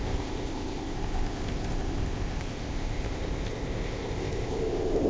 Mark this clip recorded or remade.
remade